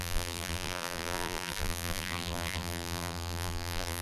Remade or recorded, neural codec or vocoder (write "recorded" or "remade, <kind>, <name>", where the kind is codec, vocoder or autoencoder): remade, vocoder, BigVGAN v2